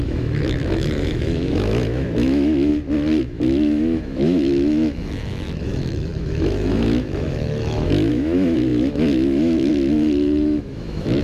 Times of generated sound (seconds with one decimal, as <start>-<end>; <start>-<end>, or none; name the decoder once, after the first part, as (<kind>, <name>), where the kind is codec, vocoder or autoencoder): 0.0-2.7 (autoencoder, DAC-VAE); 3.2-11.2